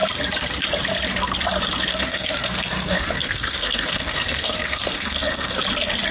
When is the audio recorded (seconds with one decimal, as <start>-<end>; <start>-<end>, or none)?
0.0-1.9; 5.6-6.1